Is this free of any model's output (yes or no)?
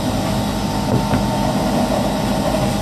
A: yes